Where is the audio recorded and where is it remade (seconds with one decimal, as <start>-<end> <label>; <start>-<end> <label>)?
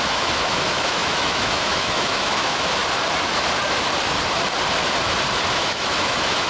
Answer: 0.0-2.8 remade; 2.8-5.5 recorded; 5.5-6.5 remade